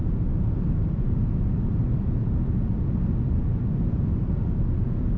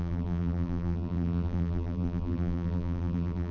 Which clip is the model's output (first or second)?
second